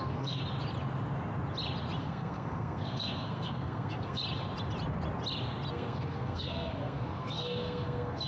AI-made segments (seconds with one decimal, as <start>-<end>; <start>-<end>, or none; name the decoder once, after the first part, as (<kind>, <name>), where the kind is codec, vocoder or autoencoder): 0.0-0.4 (codec, SNAC); 2.0-4.2; 5.7-8.3